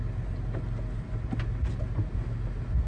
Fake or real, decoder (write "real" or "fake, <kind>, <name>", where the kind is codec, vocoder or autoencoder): real